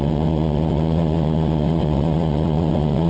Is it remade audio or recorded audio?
remade